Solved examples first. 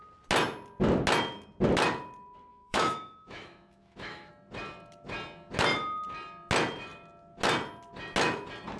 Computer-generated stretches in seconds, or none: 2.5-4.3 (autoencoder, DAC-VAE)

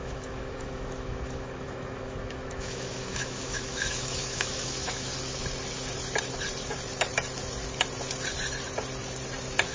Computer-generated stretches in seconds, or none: 0.0-5.1 (autoencoder, DAC-VAE)

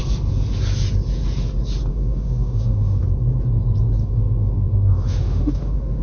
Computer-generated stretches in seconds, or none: 1.9-3.0 (autoencoder, DAC-VAE); 4.0-6.0

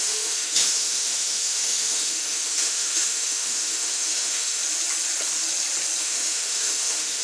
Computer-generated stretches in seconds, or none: 0.0-4.6 (autoencoder, DAC-VAE); 6.0-7.2

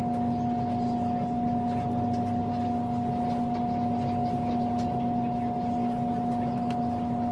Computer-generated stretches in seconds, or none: none

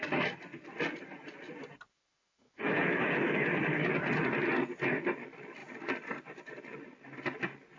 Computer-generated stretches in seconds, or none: 1.9-3.9 (autoencoder, DAC-VAE)

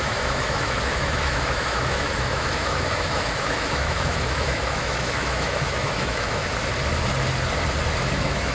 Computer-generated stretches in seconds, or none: 0.0-6.4 (autoencoder, DAC-VAE); 8.1-8.5

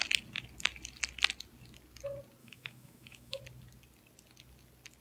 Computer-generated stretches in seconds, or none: 2.4-3.4 (autoencoder, DAC-VAE)